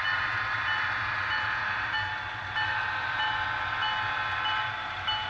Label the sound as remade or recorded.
recorded